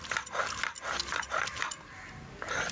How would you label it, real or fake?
real